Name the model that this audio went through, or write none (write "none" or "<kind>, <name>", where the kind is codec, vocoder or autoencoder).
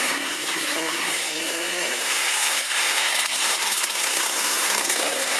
codec, SNAC